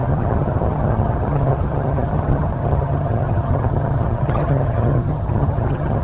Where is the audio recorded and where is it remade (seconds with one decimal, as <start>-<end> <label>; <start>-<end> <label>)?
0.0-6.0 remade